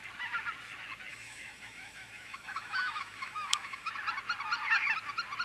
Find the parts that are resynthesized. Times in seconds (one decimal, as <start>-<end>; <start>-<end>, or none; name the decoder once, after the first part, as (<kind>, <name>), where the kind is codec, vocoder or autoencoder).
1.1-3.9 (autoencoder, DAC-VAE)